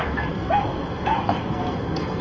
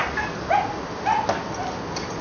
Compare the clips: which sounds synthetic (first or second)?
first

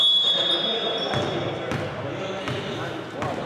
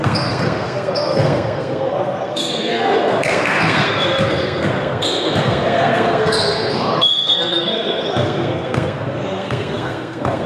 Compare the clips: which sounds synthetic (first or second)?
second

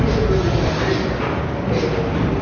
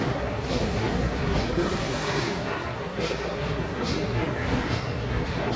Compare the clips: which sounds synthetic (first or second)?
second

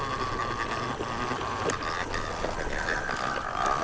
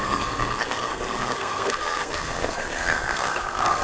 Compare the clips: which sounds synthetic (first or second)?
second